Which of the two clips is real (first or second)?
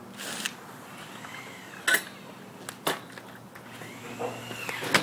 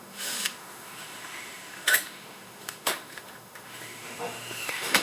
first